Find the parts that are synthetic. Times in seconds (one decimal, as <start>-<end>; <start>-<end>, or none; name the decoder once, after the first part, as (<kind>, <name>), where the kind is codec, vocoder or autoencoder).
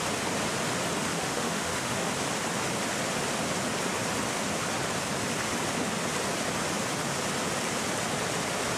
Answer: 1.1-2.1 (autoencoder, DAC-VAE)